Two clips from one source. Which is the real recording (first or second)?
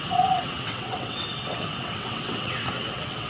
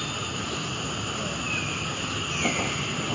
second